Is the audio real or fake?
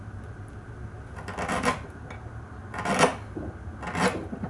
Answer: real